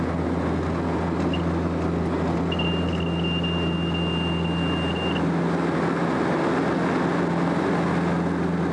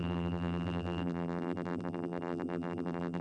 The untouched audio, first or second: first